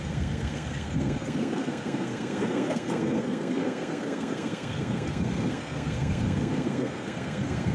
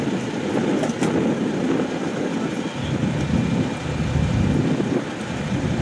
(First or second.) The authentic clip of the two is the second